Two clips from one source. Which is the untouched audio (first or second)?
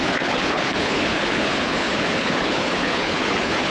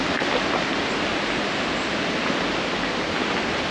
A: second